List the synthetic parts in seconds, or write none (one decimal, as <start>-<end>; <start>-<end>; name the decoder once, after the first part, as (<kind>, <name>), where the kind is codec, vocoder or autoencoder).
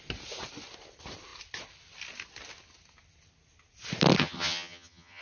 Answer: 4.2-5.2 (vocoder, HiFi-GAN)